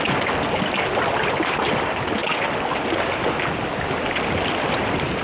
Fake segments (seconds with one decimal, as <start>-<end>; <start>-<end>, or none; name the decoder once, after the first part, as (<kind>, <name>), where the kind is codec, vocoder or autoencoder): none

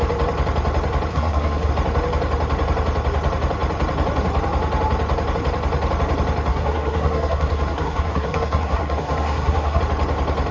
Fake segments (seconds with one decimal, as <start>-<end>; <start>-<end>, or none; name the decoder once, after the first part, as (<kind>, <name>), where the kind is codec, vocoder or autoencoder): 1.1-1.7 (codec, SNAC); 6.5-9.8

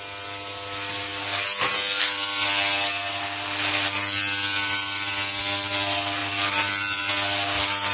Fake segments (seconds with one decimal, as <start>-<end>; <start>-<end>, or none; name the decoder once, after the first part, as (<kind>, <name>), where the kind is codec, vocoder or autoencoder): none

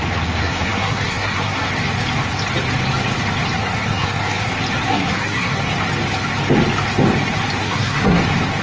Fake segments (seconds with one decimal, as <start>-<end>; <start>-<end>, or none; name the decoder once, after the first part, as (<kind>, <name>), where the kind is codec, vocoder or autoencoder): 0.4-1.7 (codec, SNAC); 3.6-4.5; 4.9-5.6; 7.6-8.2

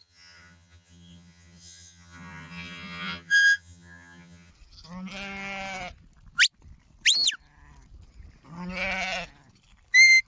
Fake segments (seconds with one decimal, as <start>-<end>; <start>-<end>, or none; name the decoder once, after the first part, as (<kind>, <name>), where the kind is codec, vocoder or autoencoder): 0.0-4.5 (vocoder, HiFi-GAN)

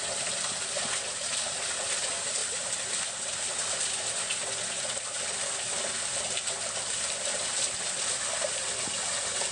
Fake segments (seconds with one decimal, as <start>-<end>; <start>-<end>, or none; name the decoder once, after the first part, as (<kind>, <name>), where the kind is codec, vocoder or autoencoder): none

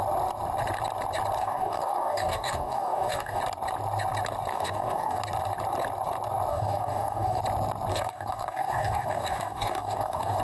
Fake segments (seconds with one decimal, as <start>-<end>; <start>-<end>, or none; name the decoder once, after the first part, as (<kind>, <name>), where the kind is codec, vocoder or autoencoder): 1.4-3.4 (codec, DAC); 4.5-5.2; 6.5-7.4; 7.9-10.4

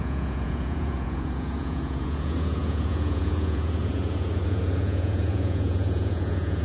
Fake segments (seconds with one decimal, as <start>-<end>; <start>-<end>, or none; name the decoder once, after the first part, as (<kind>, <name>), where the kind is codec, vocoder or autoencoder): 0.0-6.6 (vocoder, Vocos)